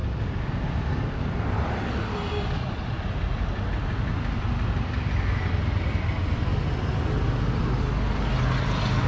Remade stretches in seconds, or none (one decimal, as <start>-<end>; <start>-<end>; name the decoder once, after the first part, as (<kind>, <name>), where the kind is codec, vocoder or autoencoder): none